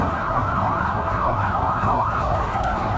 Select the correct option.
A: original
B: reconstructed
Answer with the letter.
B